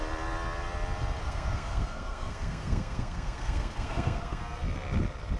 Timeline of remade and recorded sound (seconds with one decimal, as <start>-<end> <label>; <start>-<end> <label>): 0.0-1.2 recorded; 1.2-4.4 remade; 4.4-5.4 recorded

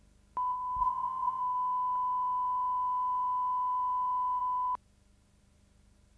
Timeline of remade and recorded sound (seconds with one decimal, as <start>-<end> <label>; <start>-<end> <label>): 0.0-0.8 recorded; 0.8-1.4 remade; 1.4-6.2 recorded

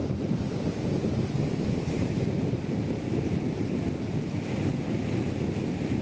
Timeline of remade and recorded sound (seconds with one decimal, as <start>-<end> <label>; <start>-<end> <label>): 0.0-3.4 remade; 3.4-6.0 recorded